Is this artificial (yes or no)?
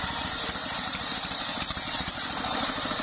yes